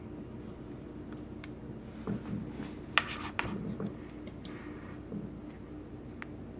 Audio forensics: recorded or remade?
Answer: recorded